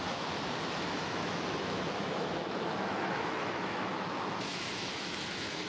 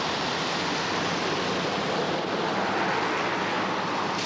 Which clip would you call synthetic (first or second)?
first